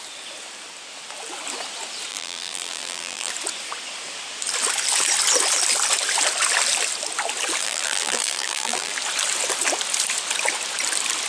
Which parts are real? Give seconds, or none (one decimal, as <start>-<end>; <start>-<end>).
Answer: 0.0-2.1; 3.3-7.6; 8.9-11.3